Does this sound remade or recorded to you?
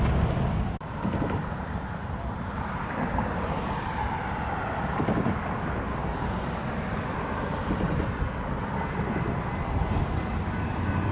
remade